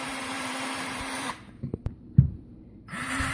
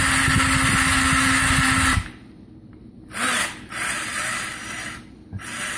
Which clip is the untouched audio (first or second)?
second